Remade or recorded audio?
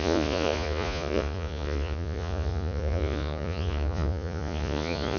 remade